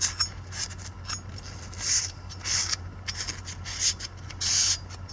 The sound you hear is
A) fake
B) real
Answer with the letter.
B